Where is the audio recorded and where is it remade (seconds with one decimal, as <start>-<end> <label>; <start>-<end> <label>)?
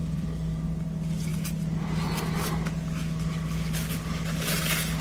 0.0-0.7 remade; 0.7-5.0 recorded